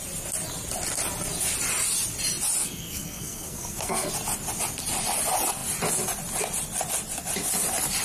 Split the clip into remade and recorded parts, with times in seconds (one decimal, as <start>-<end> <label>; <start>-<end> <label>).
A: 0.0-2.6 recorded; 2.6-4.1 remade; 4.1-8.0 recorded